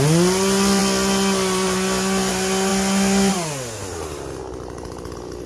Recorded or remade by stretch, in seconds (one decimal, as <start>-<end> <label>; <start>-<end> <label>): 0.0-5.5 recorded